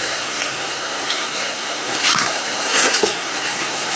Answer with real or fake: fake